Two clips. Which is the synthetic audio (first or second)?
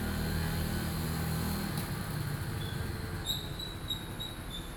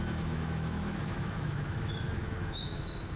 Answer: second